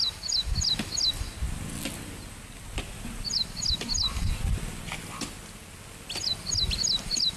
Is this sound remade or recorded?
recorded